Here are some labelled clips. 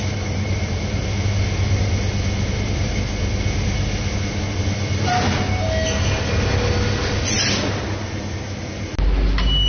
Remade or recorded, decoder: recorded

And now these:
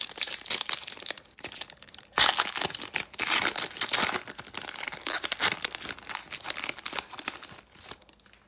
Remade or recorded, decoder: recorded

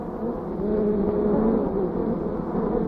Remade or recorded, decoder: recorded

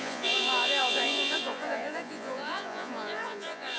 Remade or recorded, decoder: remade, vocoder, Vocos